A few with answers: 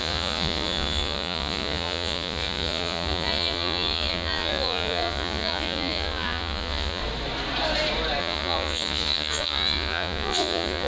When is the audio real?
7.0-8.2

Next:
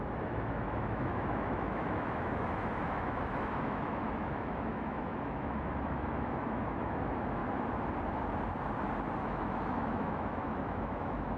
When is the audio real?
7.4-9.2

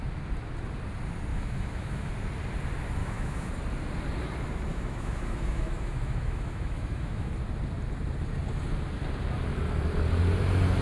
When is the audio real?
0.0-1.3; 2.1-3.0; 3.5-4.7; 7.3-10.8

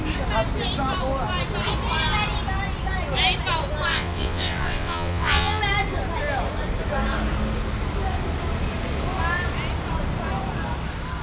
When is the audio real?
0.0-3.9; 5.6-11.2

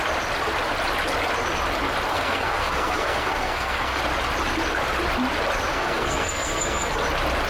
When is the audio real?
0.0-2.1; 4.0-5.7; 6.9-7.5

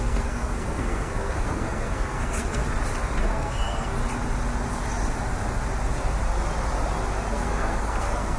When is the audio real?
2.6-3.2; 4.0-7.3

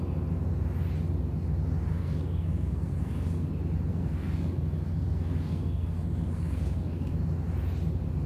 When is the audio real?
0.0-1.9; 3.5-3.9; 7.2-8.3

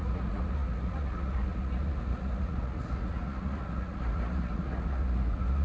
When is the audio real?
none